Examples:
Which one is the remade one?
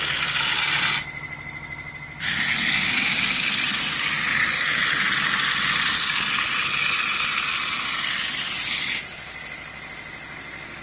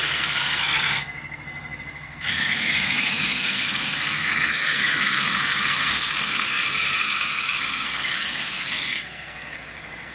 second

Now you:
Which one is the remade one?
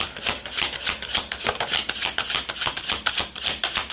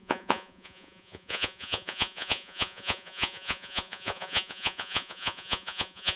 second